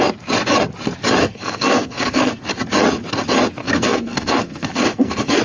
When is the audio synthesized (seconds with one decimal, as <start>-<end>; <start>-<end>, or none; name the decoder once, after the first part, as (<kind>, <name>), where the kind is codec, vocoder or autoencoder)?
1.2-2.4 (codec, SNAC); 3.6-5.4